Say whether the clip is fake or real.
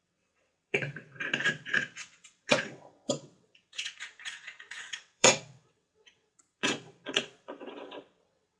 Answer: fake